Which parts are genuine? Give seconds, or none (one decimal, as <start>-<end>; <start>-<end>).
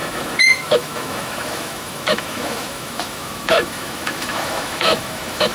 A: none